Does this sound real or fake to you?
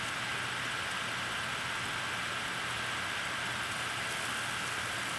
real